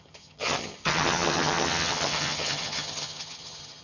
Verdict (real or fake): fake